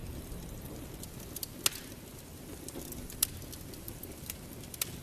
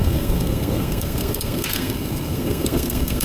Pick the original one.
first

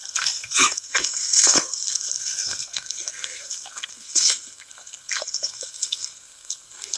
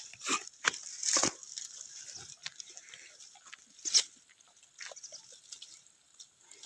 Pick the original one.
second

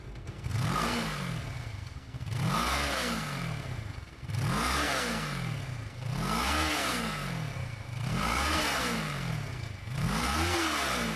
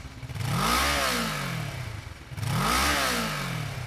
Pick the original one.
second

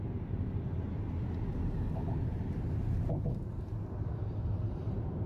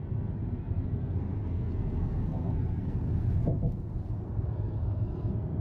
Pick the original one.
first